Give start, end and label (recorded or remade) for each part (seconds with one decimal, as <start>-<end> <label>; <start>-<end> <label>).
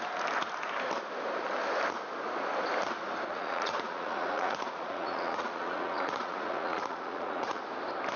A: 0.0-3.3 recorded; 3.3-7.6 remade; 7.6-8.2 recorded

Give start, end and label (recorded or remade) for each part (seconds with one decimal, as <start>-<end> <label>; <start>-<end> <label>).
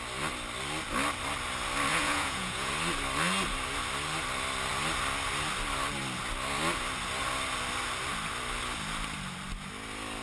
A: 0.0-1.9 recorded; 1.9-2.7 remade; 2.7-10.2 recorded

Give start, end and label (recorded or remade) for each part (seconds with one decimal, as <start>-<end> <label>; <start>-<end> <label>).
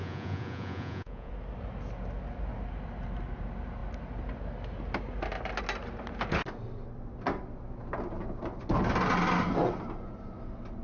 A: 0.0-1.3 remade; 1.3-10.8 recorded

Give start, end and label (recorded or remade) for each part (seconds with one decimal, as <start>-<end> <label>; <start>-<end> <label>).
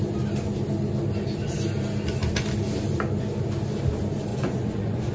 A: 0.0-4.3 recorded; 4.3-5.1 remade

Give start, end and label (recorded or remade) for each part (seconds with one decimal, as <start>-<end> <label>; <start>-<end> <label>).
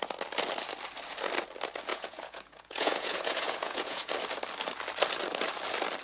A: 0.0-1.9 recorded; 1.9-4.1 remade; 4.1-6.0 recorded